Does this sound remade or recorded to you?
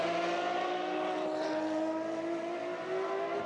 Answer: recorded